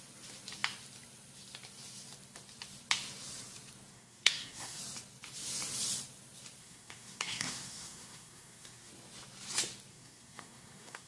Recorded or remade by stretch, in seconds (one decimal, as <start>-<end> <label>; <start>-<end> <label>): 0.0-3.9 recorded; 3.9-4.8 remade; 4.8-6.6 recorded; 6.6-8.9 remade; 8.9-9.9 recorded; 9.9-11.1 remade